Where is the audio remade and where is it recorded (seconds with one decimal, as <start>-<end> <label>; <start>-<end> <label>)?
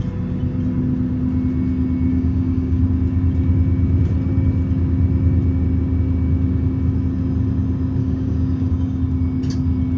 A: 0.0-2.1 recorded; 2.1-2.8 remade; 2.8-8.0 recorded; 8.0-9.0 remade; 9.0-10.0 recorded